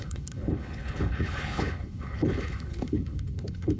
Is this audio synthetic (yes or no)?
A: yes